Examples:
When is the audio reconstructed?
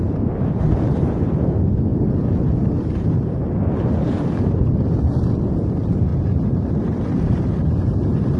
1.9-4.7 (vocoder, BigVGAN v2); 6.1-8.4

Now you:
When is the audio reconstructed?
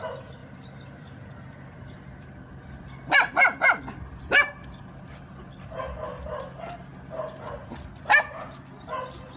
0.4-3.8 (vocoder, BigVGAN v2)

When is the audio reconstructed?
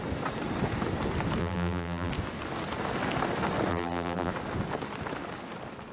1.4-2.1 (vocoder, BigVGAN v2); 3.7-4.3